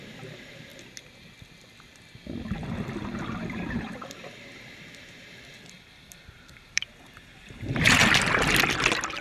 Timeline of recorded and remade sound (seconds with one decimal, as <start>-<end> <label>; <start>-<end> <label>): 0.0-0.7 remade; 0.7-5.9 recorded; 5.9-8.0 remade; 8.0-9.2 recorded